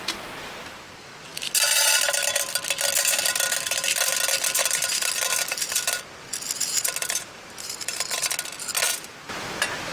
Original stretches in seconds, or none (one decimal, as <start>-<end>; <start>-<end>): 0.0-1.3; 2.0-7.0; 8.0-9.9